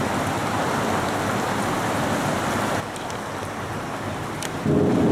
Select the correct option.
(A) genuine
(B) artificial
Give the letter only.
A